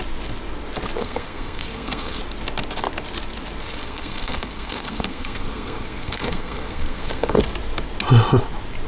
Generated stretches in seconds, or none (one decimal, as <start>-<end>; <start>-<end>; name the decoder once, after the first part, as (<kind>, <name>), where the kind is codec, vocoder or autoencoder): 1.0-2.2 (codec, SNAC); 3.6-7.4